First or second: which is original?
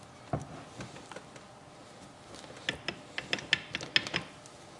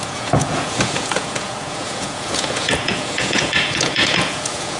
first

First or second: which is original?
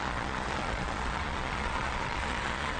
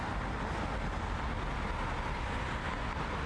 second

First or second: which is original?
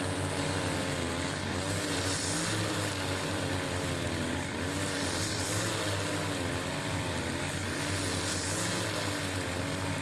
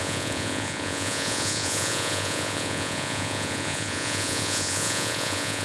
first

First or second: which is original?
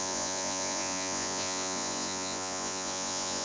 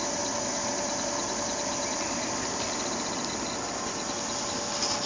second